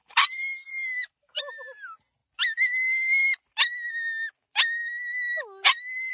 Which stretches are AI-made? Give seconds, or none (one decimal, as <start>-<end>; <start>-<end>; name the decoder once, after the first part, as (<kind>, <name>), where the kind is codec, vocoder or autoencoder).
0.0-1.4 (vocoder, BigVGAN v2)